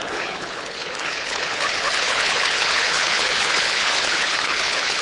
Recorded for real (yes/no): no